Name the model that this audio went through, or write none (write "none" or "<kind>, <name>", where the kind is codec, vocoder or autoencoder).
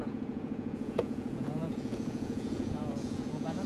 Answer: vocoder, Vocos